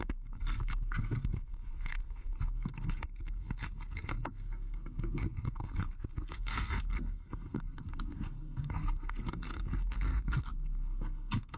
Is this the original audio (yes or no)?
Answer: no